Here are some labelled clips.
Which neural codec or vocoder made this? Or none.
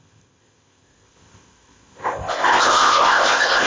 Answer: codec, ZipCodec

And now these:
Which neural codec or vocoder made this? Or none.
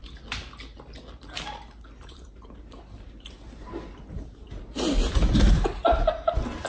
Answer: none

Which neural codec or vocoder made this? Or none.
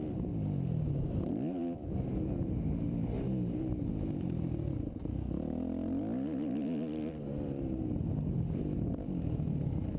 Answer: none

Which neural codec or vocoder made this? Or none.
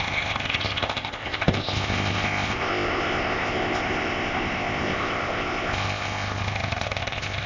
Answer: codec, ZipCodec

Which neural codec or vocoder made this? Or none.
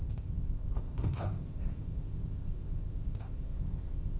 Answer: codec, ZipCodec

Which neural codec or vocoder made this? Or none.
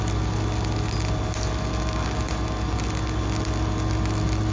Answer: none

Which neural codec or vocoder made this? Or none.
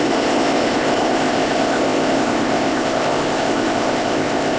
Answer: codec, ZipCodec